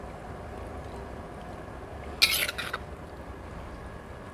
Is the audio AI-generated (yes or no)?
no